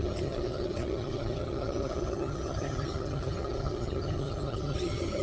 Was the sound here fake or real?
fake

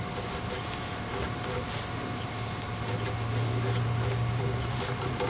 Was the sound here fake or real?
real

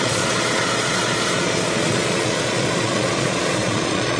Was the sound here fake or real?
fake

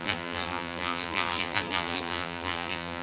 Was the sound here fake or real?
fake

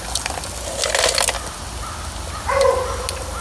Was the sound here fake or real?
real